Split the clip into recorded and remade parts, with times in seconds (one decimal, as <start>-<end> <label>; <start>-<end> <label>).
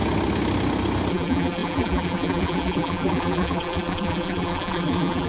0.0-1.1 recorded; 1.1-5.3 remade